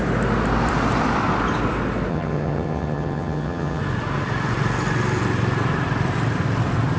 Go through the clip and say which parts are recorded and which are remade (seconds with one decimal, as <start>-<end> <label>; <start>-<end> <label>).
0.0-2.1 recorded; 2.1-3.8 remade; 3.8-7.0 recorded